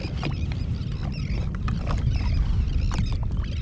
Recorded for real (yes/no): yes